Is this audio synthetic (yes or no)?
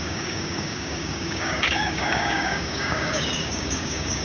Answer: yes